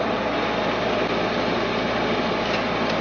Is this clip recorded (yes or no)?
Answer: yes